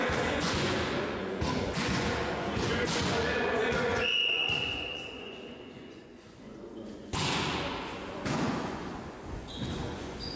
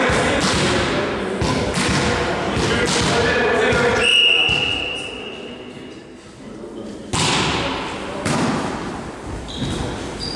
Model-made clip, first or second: first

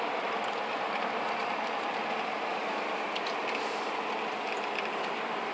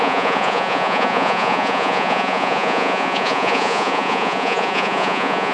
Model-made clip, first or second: second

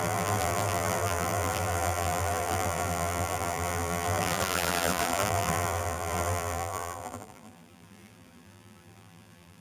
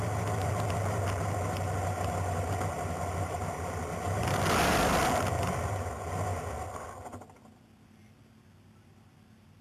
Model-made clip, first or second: first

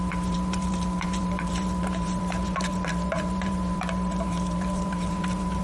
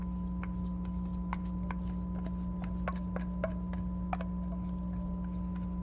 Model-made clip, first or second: first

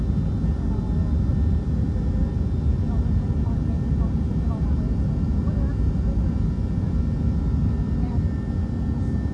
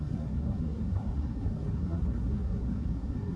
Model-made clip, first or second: second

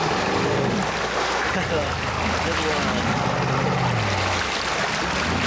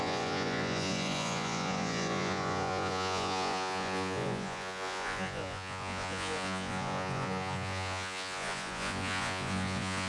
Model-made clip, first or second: second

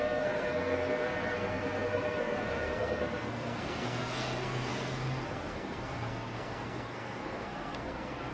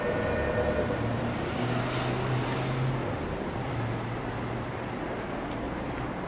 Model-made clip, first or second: first